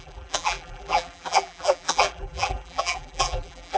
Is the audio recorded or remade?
remade